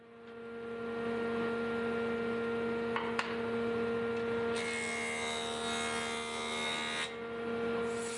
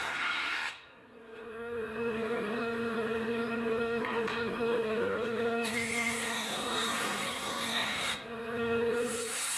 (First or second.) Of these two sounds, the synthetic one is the second